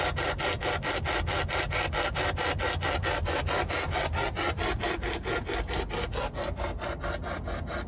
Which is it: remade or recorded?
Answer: recorded